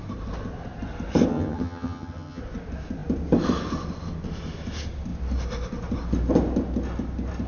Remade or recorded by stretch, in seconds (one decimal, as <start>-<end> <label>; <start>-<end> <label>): 0.0-1.3 recorded; 1.3-2.4 remade; 2.4-7.5 recorded